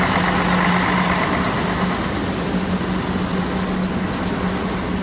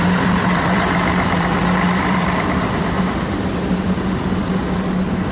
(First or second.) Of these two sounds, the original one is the first